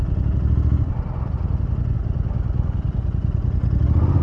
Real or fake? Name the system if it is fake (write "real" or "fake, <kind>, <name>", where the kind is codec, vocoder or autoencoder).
real